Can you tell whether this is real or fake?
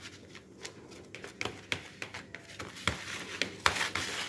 real